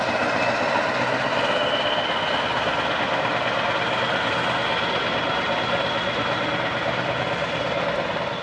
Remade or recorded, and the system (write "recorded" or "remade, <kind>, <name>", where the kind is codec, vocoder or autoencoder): recorded